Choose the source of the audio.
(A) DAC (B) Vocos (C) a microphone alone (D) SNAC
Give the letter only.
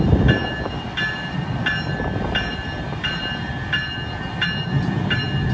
C